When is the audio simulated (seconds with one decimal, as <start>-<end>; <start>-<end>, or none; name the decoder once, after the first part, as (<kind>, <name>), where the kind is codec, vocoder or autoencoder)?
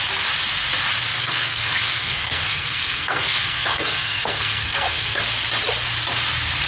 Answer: 1.2-5.2 (codec, SNAC)